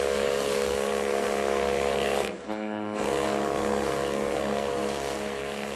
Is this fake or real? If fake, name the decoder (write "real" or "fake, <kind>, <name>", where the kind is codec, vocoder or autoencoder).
fake, codec, SNAC